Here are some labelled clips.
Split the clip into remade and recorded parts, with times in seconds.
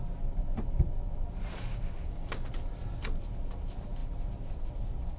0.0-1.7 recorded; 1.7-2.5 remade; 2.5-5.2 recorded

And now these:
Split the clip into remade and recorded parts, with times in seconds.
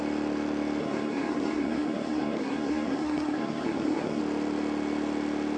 0.0-0.8 recorded; 0.8-4.2 remade; 4.2-5.6 recorded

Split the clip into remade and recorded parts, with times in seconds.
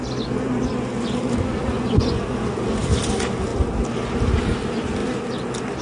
0.0-1.7 recorded; 1.7-2.2 remade; 2.2-5.8 recorded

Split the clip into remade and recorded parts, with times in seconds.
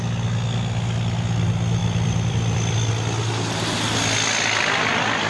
0.0-1.8 recorded; 1.8-2.9 remade; 2.9-5.3 recorded